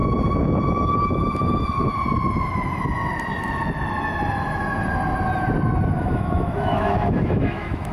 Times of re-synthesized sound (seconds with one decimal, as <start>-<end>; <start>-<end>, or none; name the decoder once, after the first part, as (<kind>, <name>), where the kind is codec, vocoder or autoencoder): 0.0-1.9 (autoencoder, DAC-VAE); 6.0-7.9